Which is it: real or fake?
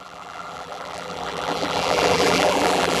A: fake